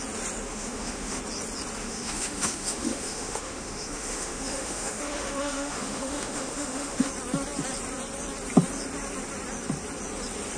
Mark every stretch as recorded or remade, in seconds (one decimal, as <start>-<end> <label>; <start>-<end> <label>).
0.0-0.5 recorded; 0.5-1.2 remade; 1.2-1.8 recorded; 1.8-7.1 remade; 7.1-10.6 recorded